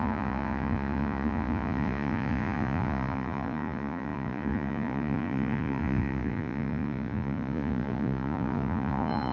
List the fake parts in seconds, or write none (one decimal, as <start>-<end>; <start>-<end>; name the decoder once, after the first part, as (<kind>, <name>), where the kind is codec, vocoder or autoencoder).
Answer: 0.0-9.3 (vocoder, Vocos)

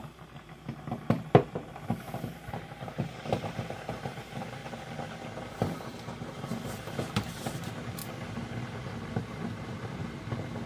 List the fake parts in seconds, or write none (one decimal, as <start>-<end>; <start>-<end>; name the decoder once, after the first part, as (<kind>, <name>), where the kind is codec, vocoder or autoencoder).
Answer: 0.0-4.6 (vocoder, BigVGAN v2); 5.5-6.5; 7.2-8.0; 9.2-10.0

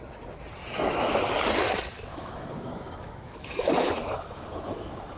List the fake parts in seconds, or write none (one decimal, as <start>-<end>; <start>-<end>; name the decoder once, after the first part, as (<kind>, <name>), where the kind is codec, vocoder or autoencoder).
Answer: 0.6-1.2 (autoencoder, DAC-VAE); 2.1-5.2

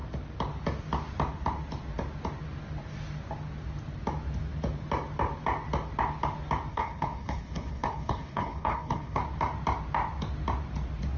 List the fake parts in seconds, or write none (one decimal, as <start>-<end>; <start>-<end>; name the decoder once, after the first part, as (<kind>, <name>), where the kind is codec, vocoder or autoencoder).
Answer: 6.7-9.2 (codec, HILCodec)

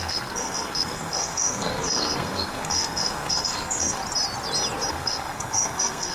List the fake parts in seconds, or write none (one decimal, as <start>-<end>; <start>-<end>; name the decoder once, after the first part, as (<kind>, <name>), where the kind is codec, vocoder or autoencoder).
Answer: 0.0-4.0 (codec, SNAC); 4.9-6.1